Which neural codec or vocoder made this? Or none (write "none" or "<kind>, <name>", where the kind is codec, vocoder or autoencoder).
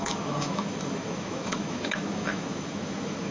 autoencoder, DAC-VAE